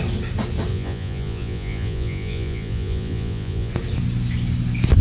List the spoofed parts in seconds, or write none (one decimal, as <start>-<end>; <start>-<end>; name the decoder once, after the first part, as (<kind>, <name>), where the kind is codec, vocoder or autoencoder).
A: 0.7-3.7 (vocoder, Vocos)

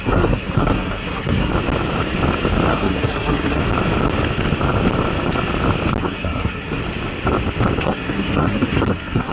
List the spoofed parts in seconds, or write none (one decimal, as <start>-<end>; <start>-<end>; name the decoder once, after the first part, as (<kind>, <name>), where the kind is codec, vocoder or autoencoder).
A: 0.0-1.5 (codec, SNAC); 2.7-3.6; 6.0-6.8; 7.8-9.3